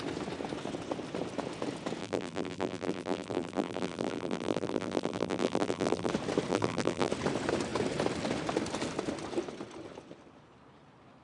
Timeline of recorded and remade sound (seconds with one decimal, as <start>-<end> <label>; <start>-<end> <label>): 0.0-2.0 recorded; 2.0-6.1 remade; 6.1-6.5 recorded; 6.5-7.1 remade; 7.1-11.2 recorded

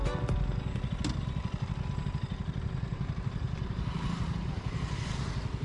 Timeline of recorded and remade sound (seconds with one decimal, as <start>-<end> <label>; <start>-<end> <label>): 0.0-2.9 recorded; 2.9-4.4 remade; 4.4-5.6 recorded

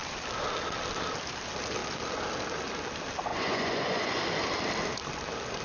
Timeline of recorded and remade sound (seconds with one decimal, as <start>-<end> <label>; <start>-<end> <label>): 0.0-3.3 recorded; 3.3-4.2 remade; 4.2-5.6 recorded

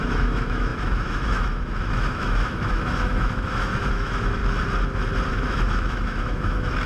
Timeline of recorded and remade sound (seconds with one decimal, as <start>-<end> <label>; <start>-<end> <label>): 0.0-4.4 remade; 4.4-5.3 recorded; 5.3-6.9 remade

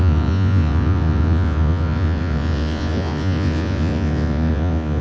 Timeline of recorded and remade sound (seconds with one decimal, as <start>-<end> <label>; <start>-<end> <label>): 0.0-5.0 remade

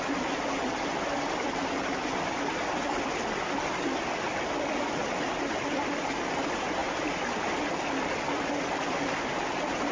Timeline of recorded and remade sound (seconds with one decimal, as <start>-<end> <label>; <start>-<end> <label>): 0.0-9.9 recorded